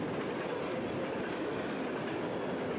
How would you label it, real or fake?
real